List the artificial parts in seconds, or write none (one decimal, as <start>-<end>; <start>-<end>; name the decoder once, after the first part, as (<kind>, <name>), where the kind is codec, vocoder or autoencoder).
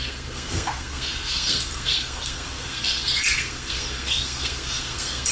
0.0-5.3 (codec, SNAC)